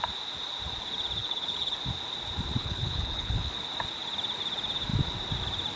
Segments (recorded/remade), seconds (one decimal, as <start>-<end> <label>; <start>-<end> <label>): 0.0-1.2 recorded; 1.2-1.7 remade; 1.7-2.6 recorded; 2.6-3.5 remade; 3.5-5.8 recorded